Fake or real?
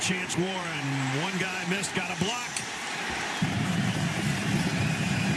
fake